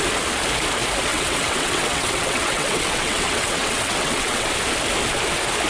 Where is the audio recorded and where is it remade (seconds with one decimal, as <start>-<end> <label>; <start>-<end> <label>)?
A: 0.0-1.1 recorded; 1.1-4.5 remade; 4.5-5.7 recorded